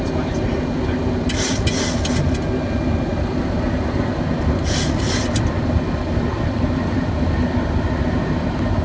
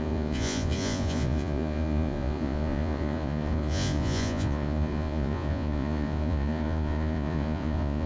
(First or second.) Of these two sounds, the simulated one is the second